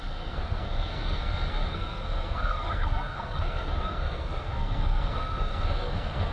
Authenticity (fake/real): fake